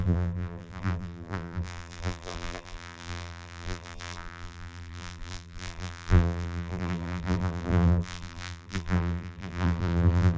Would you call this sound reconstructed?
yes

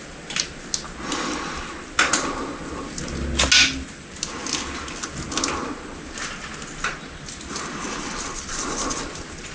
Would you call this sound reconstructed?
no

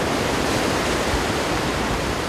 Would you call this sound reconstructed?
yes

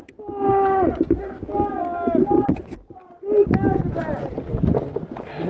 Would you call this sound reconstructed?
no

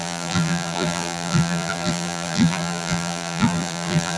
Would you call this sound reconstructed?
yes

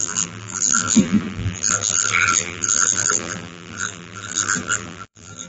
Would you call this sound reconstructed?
yes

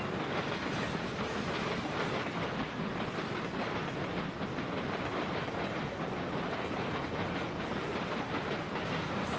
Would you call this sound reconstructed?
no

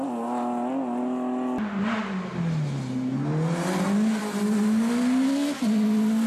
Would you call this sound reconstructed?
no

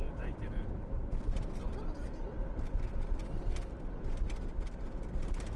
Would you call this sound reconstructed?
yes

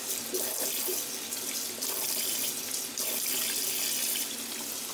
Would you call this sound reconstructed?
no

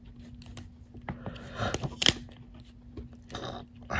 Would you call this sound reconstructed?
no